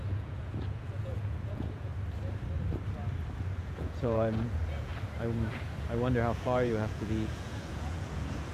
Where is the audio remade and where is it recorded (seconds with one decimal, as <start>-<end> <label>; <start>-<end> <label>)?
0.0-1.9 remade; 1.9-3.6 recorded; 3.6-4.9 remade; 4.9-6.4 recorded; 6.4-8.5 remade